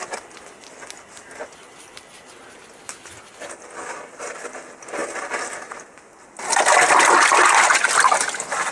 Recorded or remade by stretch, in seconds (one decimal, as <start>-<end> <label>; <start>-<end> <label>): 0.0-8.7 recorded